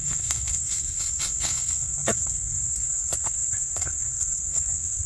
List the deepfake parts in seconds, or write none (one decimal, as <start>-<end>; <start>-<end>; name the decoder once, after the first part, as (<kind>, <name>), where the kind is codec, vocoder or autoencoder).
0.0-5.1 (codec, SNAC)

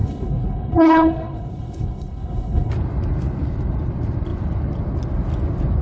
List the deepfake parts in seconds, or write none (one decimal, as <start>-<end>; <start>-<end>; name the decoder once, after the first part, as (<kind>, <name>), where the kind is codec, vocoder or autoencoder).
0.0-2.7 (codec, HILCodec)

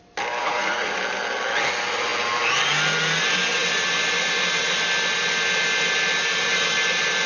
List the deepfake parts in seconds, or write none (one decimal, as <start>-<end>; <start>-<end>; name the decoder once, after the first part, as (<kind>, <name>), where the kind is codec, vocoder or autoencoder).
0.4-1.0 (vocoder, Vocos)

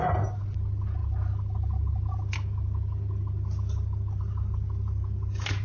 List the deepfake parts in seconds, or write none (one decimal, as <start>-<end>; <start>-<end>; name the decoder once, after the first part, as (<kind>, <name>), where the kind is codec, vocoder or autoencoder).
none

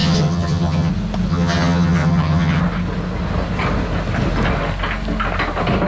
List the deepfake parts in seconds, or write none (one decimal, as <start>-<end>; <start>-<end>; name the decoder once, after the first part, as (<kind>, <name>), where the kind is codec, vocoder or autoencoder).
0.0-0.9 (vocoder, HiFi-GAN); 1.3-2.6